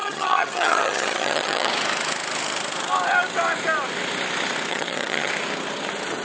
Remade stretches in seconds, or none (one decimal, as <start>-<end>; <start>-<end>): 0.0-1.7; 4.7-5.3